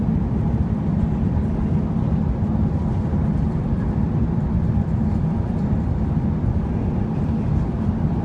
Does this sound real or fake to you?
real